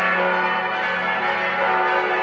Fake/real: real